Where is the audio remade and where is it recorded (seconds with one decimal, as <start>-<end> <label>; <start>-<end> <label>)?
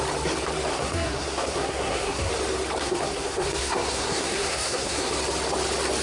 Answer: 0.0-0.7 recorded; 0.7-2.3 remade; 2.3-2.8 recorded; 2.8-5.1 remade; 5.1-6.0 recorded